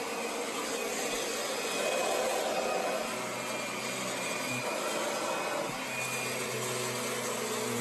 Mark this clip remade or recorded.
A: recorded